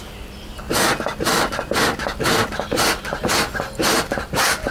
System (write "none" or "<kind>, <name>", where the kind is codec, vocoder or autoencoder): none